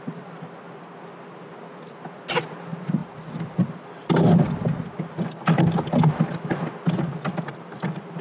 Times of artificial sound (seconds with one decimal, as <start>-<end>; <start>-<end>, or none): none

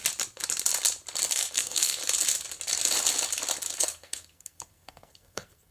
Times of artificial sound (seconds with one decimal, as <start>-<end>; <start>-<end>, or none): 1.3-2.0; 3.8-5.7